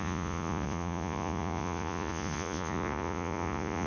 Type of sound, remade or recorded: remade